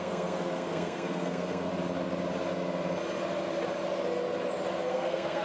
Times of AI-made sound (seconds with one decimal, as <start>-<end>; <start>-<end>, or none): 0.0-1.7; 4.9-5.4